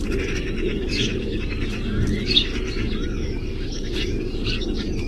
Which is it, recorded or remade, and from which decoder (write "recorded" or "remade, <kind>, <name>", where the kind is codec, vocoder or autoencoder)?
remade, codec, DAC